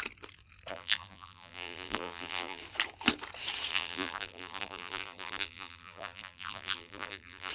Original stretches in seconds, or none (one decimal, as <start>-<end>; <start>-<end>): 0.0-0.7; 2.6-3.7